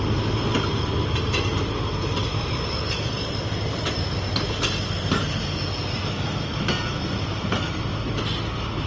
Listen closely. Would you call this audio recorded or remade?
recorded